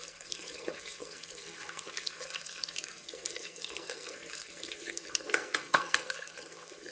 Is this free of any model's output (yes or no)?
no